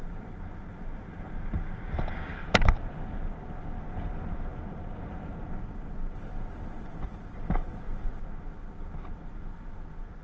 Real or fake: real